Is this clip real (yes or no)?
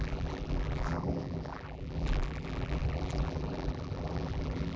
no